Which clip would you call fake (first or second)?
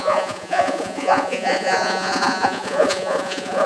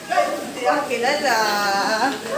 first